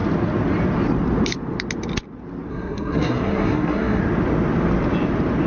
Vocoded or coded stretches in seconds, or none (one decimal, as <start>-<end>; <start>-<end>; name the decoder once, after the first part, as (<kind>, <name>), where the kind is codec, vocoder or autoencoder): 2.5-4.0 (codec, SNAC)